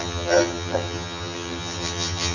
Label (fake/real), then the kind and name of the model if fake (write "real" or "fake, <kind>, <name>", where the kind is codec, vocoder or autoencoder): fake, vocoder, HiFi-GAN